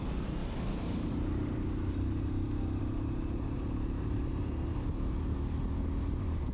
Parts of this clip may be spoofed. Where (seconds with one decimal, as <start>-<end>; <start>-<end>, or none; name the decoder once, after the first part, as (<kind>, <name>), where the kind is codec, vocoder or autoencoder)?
0.4-4.2 (vocoder, BigVGAN v2)